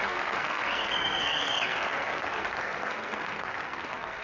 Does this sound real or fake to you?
fake